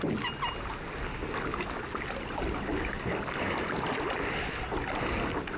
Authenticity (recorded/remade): recorded